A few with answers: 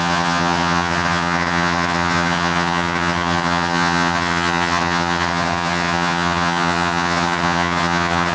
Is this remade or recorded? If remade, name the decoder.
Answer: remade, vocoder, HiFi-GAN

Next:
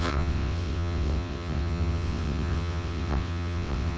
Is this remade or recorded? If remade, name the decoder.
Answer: remade, vocoder, WaveNeXt